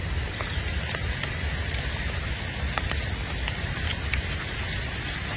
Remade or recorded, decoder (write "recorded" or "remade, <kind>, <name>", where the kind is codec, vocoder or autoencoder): recorded